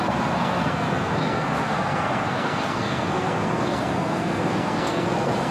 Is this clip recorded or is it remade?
remade